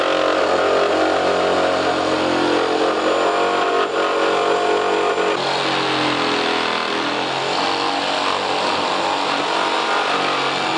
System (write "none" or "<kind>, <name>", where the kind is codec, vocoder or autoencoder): none